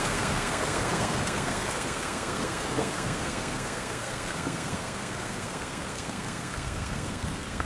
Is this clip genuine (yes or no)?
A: no